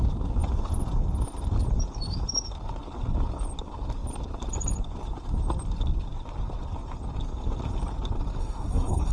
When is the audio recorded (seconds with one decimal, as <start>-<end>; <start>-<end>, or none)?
0.0-8.4

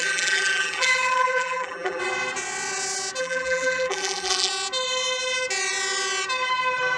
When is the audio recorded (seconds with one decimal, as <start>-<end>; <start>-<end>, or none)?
2.0-3.2; 4.5-7.0